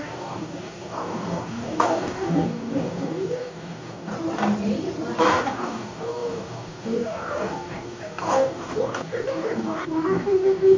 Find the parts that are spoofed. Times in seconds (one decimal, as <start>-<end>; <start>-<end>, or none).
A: 0.0-4.1; 5.2-10.8